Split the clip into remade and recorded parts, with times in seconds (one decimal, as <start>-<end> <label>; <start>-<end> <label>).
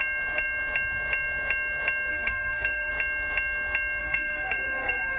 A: 0.0-2.1 recorded; 2.1-2.9 remade; 2.9-4.0 recorded; 4.0-5.2 remade